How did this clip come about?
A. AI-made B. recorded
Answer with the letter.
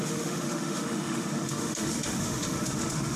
A